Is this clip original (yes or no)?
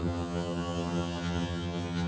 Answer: no